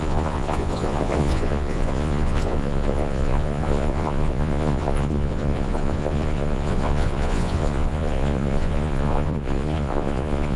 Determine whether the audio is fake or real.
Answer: fake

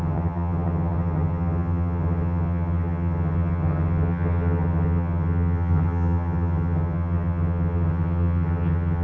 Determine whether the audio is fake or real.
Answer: fake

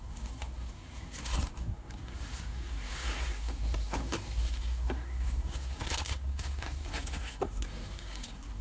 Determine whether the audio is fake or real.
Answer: fake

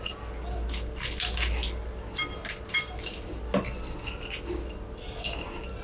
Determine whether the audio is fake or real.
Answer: real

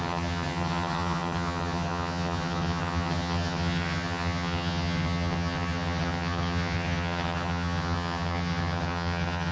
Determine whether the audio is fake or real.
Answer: fake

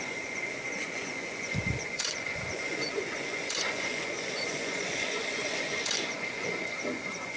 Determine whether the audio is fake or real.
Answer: fake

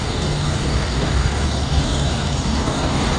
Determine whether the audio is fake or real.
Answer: fake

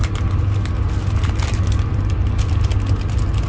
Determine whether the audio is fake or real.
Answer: real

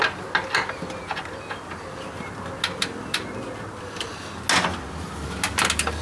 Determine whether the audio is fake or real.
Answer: real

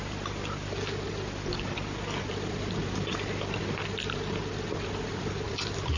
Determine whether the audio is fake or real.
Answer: real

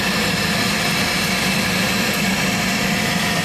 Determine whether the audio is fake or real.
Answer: real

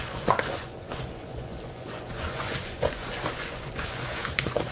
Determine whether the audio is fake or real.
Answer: fake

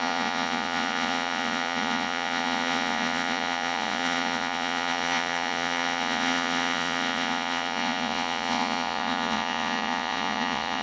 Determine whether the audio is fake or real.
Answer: fake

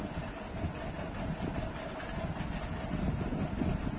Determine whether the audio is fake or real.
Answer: real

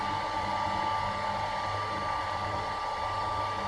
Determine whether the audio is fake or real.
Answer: real